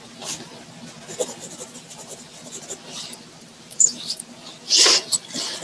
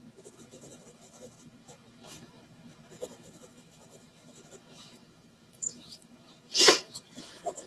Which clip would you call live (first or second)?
first